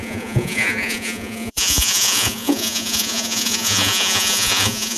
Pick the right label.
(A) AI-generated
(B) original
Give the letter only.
A